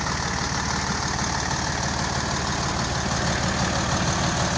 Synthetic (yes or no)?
no